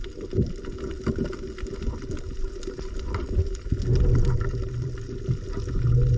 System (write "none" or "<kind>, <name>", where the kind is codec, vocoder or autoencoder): none